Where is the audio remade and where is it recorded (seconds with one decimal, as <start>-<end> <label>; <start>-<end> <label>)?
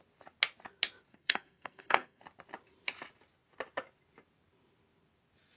0.0-1.1 recorded; 1.1-2.2 remade; 2.2-5.6 recorded